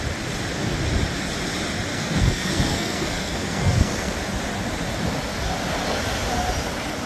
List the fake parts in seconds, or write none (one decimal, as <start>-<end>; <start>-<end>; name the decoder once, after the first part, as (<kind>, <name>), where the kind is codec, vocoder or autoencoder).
1.9-4.2 (codec, SNAC)